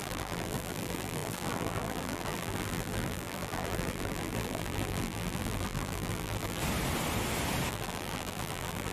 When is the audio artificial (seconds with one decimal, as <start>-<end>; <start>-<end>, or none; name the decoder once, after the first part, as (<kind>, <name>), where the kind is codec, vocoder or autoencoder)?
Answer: 0.0-6.6 (vocoder, BigVGAN v2); 7.7-8.9